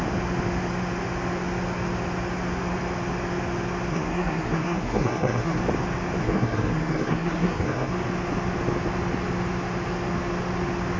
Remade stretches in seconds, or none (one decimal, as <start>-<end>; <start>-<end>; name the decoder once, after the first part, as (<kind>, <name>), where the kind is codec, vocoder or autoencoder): 3.9-5.6 (codec, SNAC); 6.2-7.9

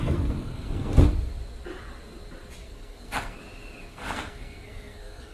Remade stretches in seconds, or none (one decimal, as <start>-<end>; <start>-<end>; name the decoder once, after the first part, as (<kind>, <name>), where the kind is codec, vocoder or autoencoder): 0.0-1.3 (codec, SNAC); 2.6-3.4; 3.9-5.3

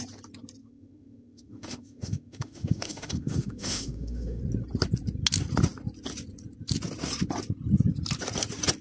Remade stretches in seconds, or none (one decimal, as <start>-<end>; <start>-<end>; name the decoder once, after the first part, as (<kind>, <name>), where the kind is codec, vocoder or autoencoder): 0.6-4.4 (autoencoder, DAC-VAE)